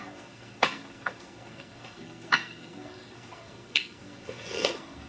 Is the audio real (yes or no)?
no